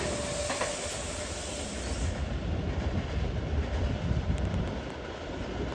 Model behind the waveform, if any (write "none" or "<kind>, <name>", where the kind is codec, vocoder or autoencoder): none